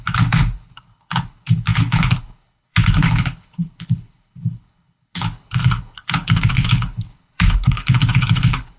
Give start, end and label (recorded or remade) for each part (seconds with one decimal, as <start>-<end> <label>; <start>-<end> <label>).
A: 0.0-8.8 remade